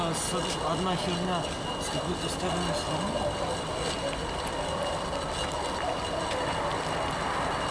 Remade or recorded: recorded